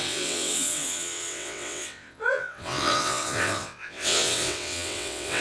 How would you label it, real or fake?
fake